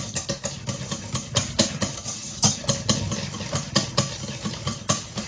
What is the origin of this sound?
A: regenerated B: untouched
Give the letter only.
B